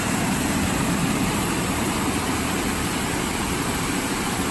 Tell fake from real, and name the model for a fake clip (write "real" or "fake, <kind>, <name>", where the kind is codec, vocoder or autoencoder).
fake, vocoder, BigVGAN v2